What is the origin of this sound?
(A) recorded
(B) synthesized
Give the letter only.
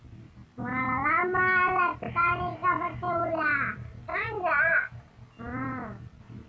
A